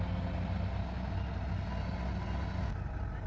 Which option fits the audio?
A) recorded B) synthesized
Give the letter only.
A